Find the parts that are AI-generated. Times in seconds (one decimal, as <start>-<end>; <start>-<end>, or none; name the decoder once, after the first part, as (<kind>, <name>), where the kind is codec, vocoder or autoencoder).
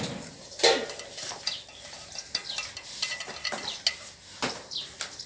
none